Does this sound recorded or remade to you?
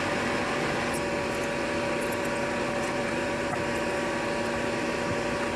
recorded